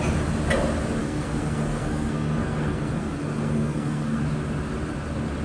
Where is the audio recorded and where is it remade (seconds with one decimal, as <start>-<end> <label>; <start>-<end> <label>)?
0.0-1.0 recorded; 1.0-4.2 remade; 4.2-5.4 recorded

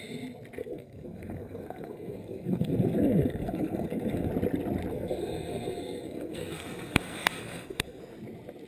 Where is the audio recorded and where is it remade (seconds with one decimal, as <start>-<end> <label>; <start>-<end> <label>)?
0.0-0.6 recorded; 0.6-4.3 remade; 4.3-4.9 recorded; 4.9-8.0 remade; 8.0-8.7 recorded

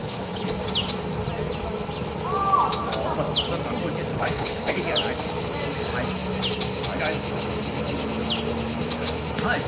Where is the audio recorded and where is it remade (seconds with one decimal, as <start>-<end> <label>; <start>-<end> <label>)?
0.0-0.5 remade; 0.5-4.1 recorded; 4.1-4.8 remade; 4.8-9.7 recorded

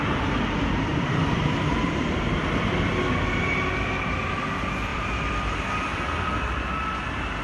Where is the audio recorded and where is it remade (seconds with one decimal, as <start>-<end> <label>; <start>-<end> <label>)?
0.0-0.9 recorded; 0.9-2.4 remade; 2.4-4.9 recorded; 4.9-5.7 remade; 5.7-7.4 recorded